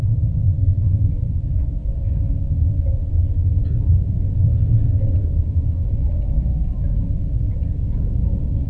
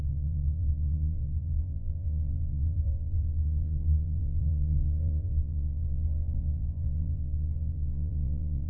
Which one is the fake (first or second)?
second